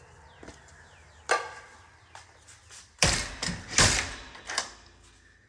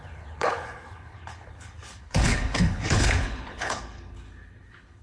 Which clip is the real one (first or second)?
first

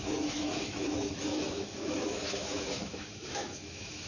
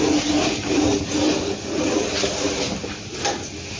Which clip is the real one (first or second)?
second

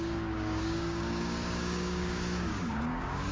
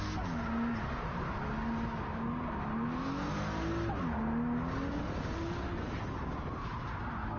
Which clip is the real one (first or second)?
second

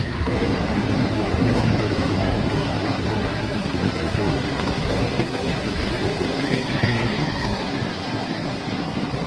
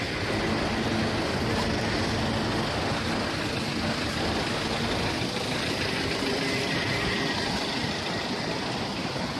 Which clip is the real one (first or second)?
second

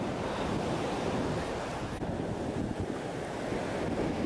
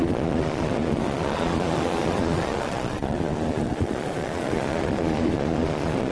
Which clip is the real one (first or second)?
first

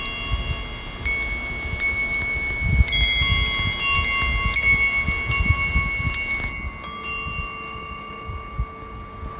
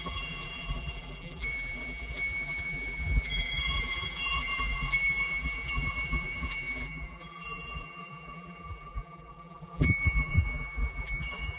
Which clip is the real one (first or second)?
first